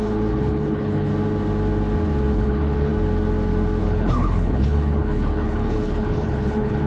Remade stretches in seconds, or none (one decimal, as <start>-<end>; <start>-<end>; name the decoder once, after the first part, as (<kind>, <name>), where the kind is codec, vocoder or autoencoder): 0.0-1.1 (codec, HILCodec); 2.3-2.9; 3.8-6.9